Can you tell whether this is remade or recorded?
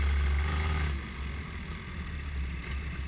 recorded